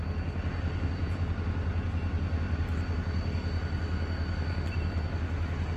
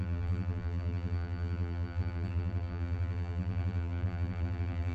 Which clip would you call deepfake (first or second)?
second